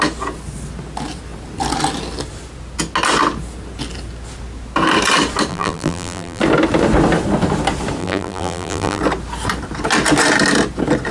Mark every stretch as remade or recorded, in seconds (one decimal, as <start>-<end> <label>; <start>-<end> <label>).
0.0-5.5 recorded; 5.5-6.4 remade; 6.4-8.0 recorded; 8.0-9.0 remade; 9.0-11.1 recorded